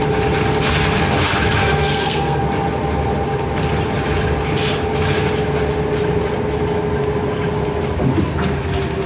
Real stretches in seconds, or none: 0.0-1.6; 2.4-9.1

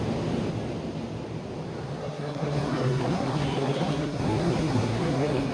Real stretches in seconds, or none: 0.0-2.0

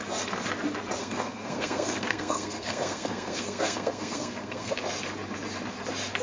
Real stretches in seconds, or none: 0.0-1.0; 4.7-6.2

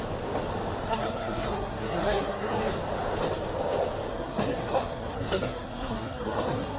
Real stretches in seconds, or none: 0.0-0.9; 2.7-4.1

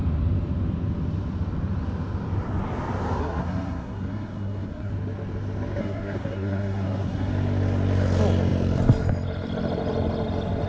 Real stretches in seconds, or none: 0.0-3.2; 4.9-5.8; 7.3-10.7

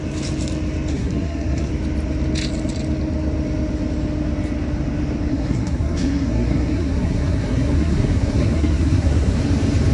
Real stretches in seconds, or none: 0.0-0.9; 1.7-5.3; 9.4-9.9